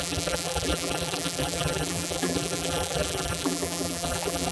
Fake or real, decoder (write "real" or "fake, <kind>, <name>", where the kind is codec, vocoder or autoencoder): fake, vocoder, BigVGAN v2